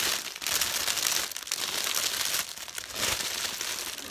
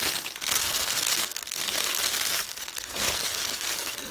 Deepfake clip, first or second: second